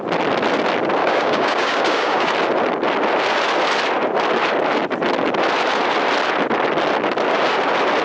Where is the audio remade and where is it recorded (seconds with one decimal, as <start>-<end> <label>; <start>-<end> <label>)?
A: 0.0-1.0 recorded; 1.0-2.3 remade; 2.3-8.0 recorded